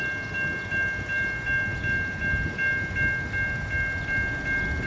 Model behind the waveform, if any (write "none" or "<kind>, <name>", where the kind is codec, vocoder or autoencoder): none